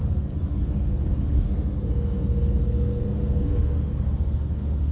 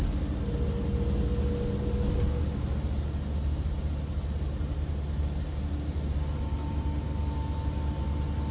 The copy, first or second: first